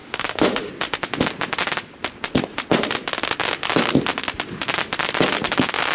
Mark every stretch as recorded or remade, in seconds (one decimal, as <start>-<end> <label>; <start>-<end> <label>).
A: 0.0-0.7 remade; 0.7-5.9 recorded